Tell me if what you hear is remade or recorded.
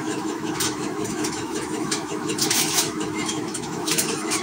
remade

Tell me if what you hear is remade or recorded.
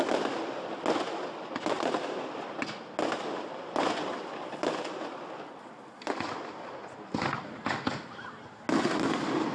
recorded